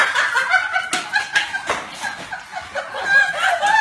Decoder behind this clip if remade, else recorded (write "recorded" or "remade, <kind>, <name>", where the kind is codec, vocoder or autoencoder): recorded